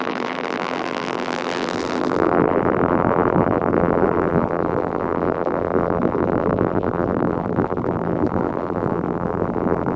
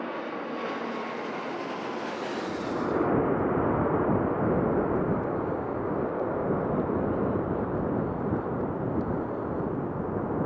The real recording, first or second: second